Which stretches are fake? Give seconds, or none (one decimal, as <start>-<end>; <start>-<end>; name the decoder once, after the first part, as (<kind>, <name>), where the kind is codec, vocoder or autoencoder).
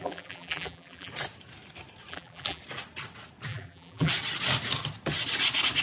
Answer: 0.0-1.1 (vocoder, BigVGAN v2); 2.1-2.6; 3.5-4.1